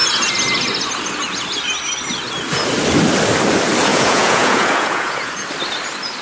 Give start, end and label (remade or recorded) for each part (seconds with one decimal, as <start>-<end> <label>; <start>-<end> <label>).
0.0-3.9 recorded; 3.9-5.3 remade; 5.3-6.2 recorded